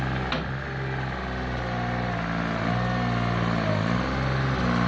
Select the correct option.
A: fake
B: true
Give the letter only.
B